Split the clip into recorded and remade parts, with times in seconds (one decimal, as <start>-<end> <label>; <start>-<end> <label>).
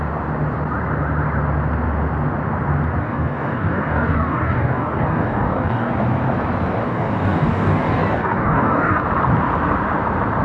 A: 0.0-3.0 recorded; 3.0-5.9 remade; 5.9-6.8 recorded; 6.8-9.0 remade; 9.0-10.4 recorded